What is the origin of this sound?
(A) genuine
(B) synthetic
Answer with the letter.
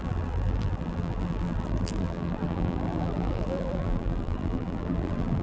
B